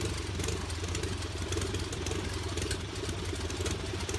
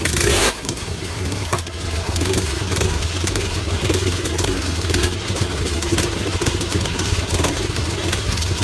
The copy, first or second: second